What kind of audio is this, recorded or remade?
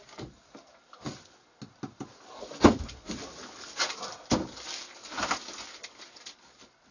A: recorded